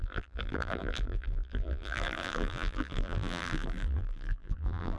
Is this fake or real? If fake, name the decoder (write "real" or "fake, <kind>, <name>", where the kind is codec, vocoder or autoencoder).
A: fake, vocoder, BigVGAN v2